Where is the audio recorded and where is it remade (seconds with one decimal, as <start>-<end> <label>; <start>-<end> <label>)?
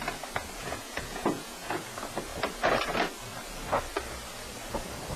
0.0-0.6 recorded; 0.6-1.8 remade; 1.8-5.2 recorded